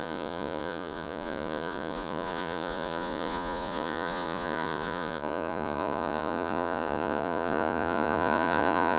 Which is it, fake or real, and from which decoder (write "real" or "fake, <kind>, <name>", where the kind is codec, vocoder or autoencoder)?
fake, vocoder, Vocos